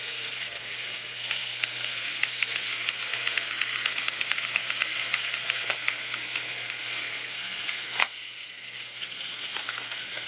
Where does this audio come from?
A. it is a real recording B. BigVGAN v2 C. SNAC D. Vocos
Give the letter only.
C